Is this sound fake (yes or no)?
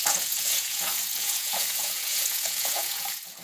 yes